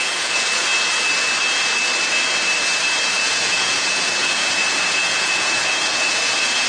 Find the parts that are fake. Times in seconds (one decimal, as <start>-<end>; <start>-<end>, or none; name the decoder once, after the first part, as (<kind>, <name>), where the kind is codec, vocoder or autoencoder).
0.0-0.7 (vocoder, Vocos); 3.1-6.7